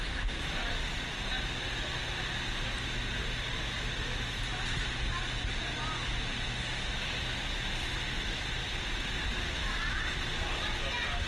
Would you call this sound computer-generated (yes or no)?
no